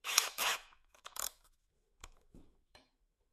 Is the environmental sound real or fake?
fake